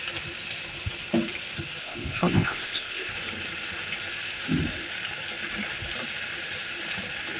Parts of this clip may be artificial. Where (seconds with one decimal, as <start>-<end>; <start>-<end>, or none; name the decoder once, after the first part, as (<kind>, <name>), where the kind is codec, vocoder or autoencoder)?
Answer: 1.8-3.1 (codec, ZipCodec)